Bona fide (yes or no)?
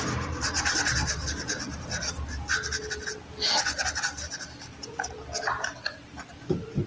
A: yes